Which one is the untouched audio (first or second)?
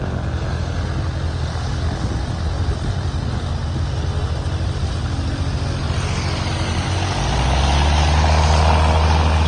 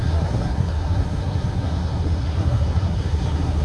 first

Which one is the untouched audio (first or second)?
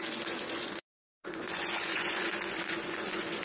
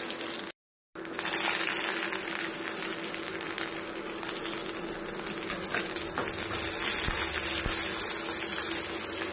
second